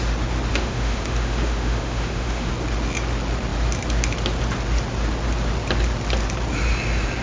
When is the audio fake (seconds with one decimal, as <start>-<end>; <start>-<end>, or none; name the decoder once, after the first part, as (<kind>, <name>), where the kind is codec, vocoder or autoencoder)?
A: 0.5-2.5 (autoencoder, DAC-VAE)